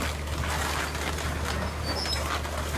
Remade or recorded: recorded